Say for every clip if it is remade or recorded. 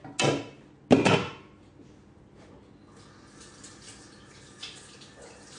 recorded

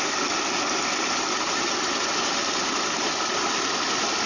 recorded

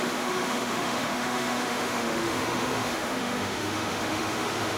remade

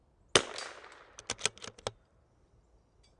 recorded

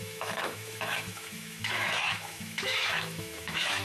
remade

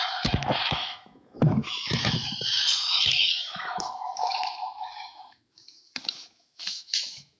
remade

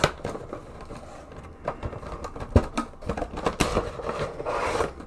recorded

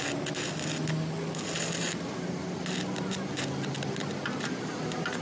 recorded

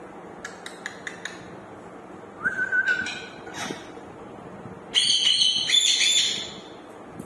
recorded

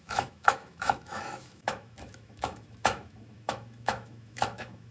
remade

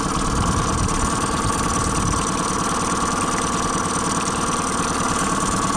recorded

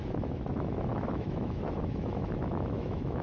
remade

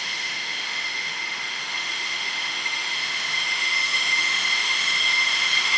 remade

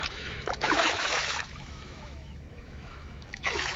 remade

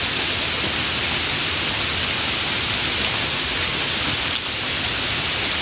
recorded